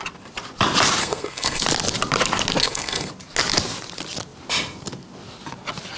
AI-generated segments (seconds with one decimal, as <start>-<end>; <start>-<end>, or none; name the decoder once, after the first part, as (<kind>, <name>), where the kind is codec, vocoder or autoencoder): 1.0-1.6 (codec, SNAC); 2.6-3.1